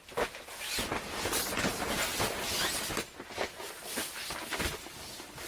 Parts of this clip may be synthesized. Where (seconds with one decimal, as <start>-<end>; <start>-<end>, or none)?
none